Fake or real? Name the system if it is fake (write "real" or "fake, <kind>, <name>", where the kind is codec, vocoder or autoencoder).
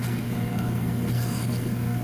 fake, codec, SNAC